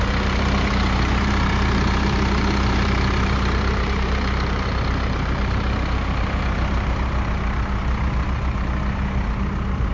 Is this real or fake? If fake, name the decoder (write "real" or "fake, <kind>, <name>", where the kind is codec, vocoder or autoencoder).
fake, vocoder, BigVGAN v2